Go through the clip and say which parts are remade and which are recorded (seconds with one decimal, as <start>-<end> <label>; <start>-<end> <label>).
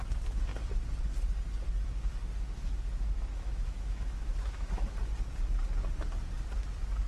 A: 0.0-2.6 recorded; 2.6-4.9 remade; 4.9-7.1 recorded